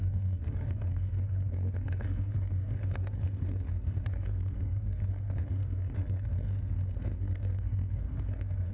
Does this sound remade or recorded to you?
remade